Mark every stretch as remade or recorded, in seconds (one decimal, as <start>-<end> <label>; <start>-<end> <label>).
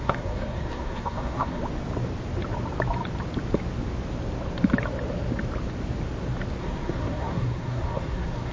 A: 0.0-1.6 remade; 1.6-6.6 recorded; 6.6-8.5 remade